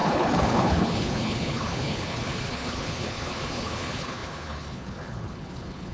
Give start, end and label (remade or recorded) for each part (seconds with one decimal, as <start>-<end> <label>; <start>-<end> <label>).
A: 0.0-5.9 remade